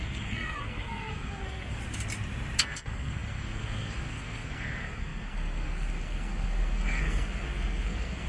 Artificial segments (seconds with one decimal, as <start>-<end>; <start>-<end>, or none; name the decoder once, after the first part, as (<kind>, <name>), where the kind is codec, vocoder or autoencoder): 0.0-1.8 (codec, SNAC); 2.6-8.3